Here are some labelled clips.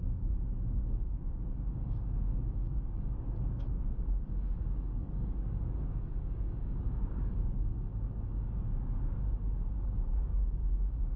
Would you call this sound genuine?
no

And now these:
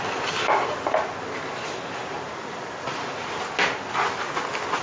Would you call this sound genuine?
yes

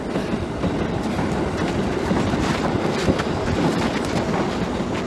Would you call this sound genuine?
yes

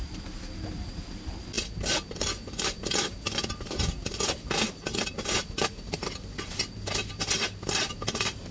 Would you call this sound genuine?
yes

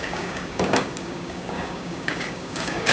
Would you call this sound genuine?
no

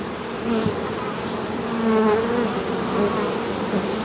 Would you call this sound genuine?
yes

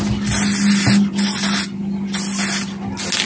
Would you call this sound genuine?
yes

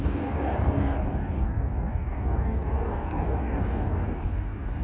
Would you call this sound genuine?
no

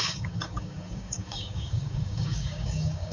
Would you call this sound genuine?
no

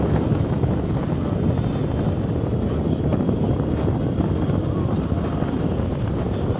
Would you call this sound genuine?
yes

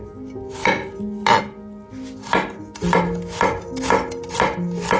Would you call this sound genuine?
yes